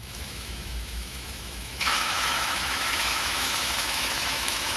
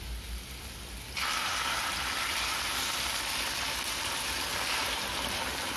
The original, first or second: second